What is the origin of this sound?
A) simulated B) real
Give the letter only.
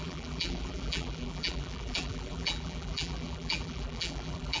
A